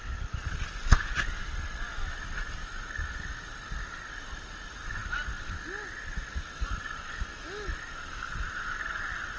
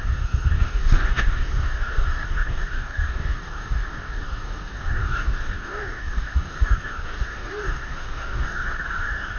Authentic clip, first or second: first